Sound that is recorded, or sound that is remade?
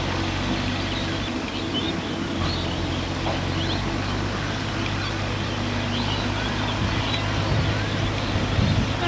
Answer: recorded